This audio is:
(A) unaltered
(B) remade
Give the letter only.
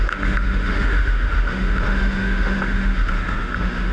B